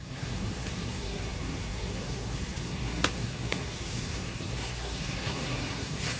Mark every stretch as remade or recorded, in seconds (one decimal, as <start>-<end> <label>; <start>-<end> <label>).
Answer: 0.0-6.2 remade